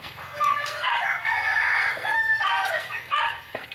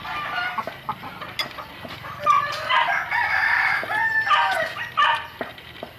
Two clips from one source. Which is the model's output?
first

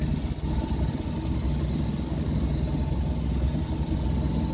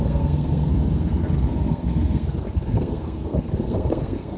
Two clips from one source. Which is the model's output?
second